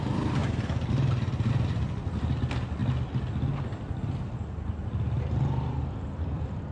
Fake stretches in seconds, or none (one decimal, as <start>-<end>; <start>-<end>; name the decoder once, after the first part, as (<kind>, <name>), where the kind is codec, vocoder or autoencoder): 0.0-0.4 (vocoder, BigVGAN v2); 1.5-2.8; 5.2-6.7